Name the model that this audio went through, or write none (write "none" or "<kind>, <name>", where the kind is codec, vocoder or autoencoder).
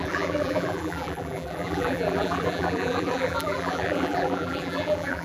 vocoder, BigVGAN v2